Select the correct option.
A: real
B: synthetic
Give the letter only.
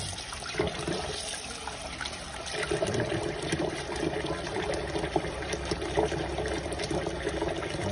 B